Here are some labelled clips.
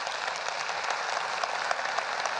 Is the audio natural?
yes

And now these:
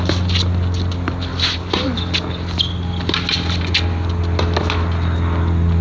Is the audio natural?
yes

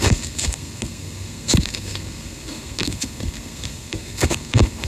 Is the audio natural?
no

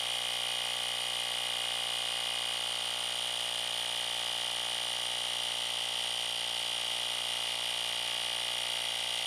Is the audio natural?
yes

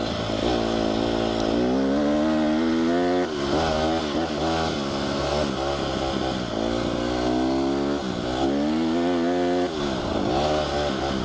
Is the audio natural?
yes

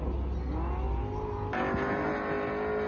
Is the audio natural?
yes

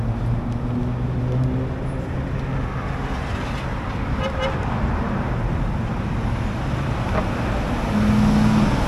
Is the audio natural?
yes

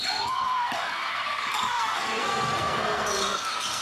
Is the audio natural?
no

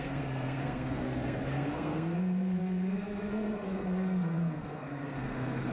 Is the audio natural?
no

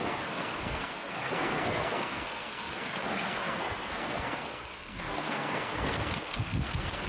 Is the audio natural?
no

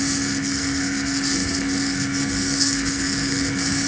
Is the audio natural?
no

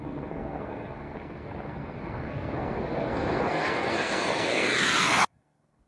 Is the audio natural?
no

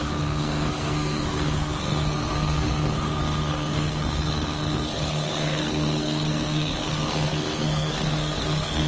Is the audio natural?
no